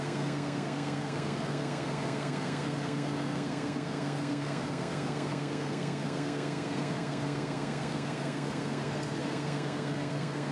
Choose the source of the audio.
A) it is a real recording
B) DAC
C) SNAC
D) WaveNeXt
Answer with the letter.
C